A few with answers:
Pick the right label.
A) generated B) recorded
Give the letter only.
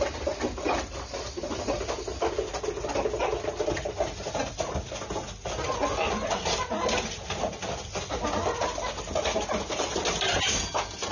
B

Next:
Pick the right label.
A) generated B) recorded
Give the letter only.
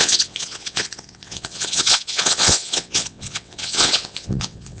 A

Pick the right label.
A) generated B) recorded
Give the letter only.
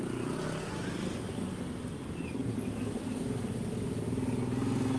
B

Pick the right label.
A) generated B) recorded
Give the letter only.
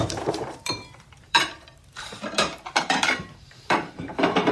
A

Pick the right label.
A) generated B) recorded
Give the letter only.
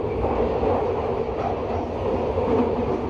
B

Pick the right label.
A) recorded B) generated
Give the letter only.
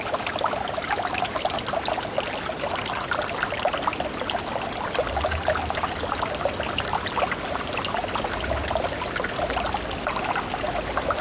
A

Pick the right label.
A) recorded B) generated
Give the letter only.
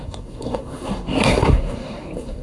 B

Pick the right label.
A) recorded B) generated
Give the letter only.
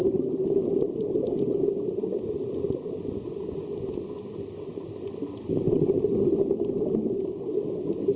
A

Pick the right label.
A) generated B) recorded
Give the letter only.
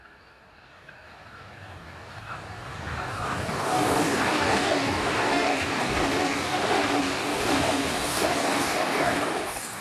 A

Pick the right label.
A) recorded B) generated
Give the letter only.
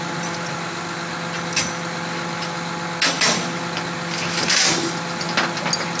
A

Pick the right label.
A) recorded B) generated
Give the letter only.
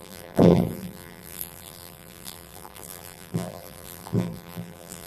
B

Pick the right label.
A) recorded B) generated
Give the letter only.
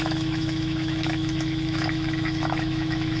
B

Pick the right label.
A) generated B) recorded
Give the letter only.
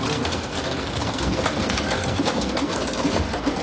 A